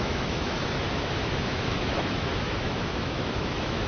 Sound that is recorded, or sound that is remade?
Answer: remade